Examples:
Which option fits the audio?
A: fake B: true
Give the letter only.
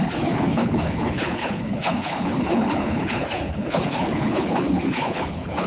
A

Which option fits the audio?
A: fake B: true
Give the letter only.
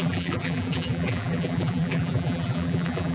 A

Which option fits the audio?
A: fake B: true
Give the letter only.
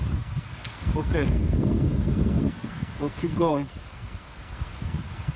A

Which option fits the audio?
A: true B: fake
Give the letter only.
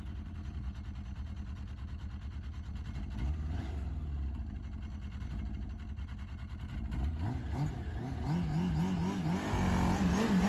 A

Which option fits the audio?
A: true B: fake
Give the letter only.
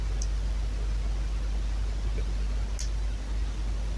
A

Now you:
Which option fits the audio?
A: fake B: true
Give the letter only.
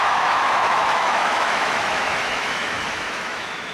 A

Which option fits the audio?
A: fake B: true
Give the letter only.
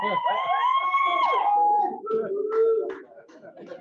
B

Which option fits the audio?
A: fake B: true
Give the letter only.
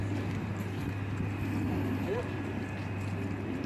B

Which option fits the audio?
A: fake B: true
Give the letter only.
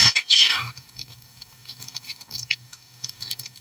A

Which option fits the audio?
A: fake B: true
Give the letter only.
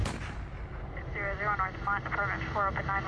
B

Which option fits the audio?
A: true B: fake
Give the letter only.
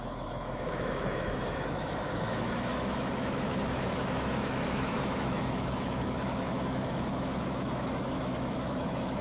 B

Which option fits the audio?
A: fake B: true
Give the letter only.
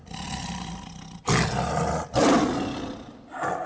B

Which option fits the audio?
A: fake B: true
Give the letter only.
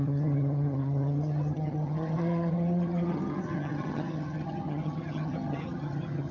A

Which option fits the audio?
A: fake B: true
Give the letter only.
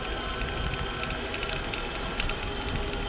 B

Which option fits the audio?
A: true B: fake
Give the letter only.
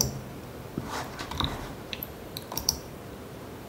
B